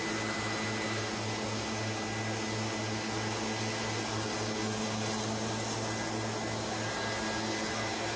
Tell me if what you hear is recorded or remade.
recorded